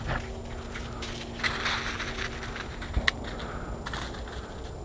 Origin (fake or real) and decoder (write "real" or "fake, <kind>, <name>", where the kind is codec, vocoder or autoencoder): real